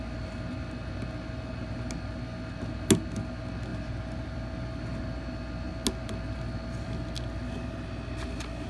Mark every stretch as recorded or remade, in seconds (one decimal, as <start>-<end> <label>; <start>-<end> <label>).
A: 0.0-8.7 recorded